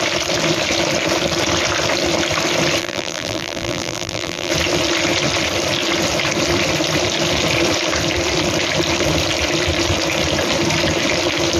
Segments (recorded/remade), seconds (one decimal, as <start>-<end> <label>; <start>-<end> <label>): 0.0-2.8 recorded; 2.8-4.5 remade; 4.5-11.6 recorded